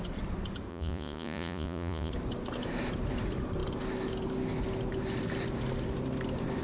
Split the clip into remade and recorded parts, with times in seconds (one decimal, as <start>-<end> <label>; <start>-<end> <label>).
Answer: 0.0-0.7 recorded; 0.7-2.1 remade; 2.1-6.6 recorded